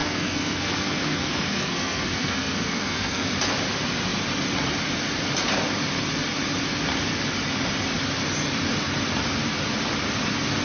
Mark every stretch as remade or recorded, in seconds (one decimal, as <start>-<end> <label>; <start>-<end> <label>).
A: 0.0-3.3 remade; 3.3-10.6 recorded